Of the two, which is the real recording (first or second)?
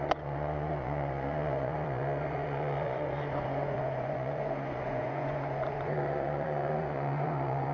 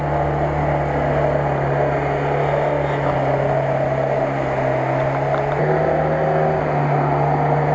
second